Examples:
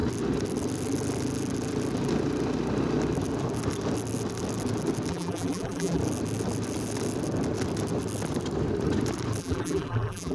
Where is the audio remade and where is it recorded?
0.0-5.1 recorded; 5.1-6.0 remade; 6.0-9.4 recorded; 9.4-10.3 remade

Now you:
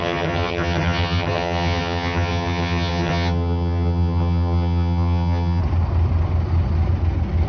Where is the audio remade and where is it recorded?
0.0-5.6 remade; 5.6-7.5 recorded

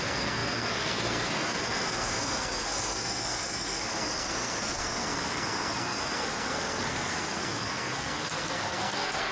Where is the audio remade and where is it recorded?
0.0-9.3 remade

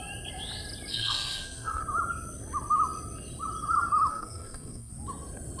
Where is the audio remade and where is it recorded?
0.0-0.9 recorded; 0.9-1.8 remade; 1.8-4.1 recorded; 4.1-4.9 remade; 4.9-5.6 recorded